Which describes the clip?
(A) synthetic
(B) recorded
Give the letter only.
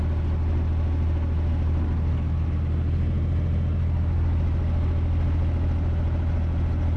B